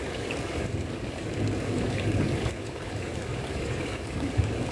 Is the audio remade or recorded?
remade